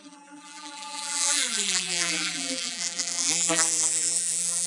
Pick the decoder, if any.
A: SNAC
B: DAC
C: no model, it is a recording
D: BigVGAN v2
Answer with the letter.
D